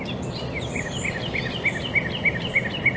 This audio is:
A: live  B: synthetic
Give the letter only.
A